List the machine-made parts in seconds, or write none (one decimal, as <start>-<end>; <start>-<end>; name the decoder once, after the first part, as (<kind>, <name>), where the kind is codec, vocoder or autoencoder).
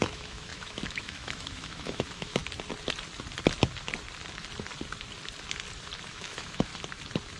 0.0-2.4 (autoencoder, DAC-VAE); 6.1-6.7